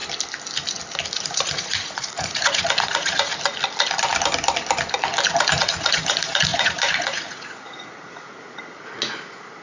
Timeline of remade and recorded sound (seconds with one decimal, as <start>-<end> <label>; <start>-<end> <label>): 0.0-1.2 recorded; 1.2-3.3 remade; 3.3-5.5 recorded; 5.5-9.6 remade